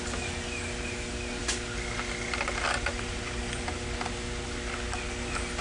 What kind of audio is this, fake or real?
real